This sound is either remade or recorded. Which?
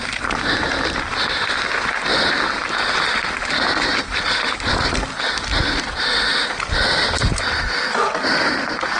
recorded